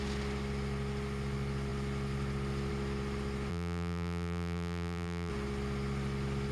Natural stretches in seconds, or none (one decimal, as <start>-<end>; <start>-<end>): 0.0-3.5; 5.3-6.5